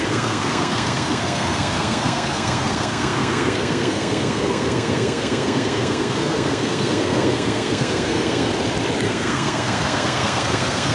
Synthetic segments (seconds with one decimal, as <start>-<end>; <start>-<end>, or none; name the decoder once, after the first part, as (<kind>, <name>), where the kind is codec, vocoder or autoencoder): 0.0-8.5 (codec, SNAC); 9.1-10.9